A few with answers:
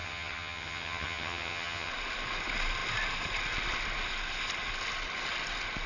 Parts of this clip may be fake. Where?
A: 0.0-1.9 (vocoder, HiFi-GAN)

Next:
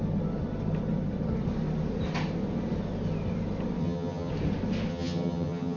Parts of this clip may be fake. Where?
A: 3.8-4.3 (vocoder, HiFi-GAN); 4.9-5.8

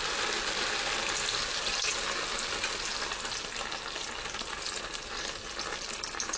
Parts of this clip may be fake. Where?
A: none